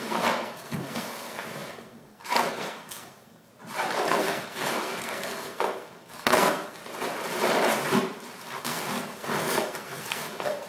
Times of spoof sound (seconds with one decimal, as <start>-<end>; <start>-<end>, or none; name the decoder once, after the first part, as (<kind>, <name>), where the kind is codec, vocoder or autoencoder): 0.0-3.5 (codec, SNAC); 4.1-6.8; 8.6-10.7